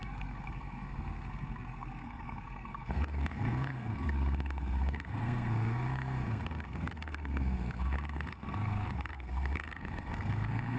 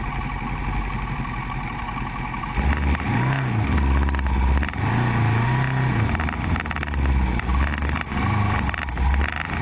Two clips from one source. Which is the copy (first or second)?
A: first